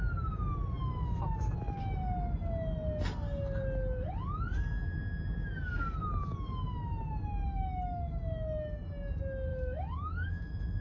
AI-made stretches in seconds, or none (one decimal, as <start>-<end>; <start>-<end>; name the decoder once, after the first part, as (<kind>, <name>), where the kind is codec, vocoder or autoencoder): 7.5-8.2 (autoencoder, DAC-VAE); 9.5-10.8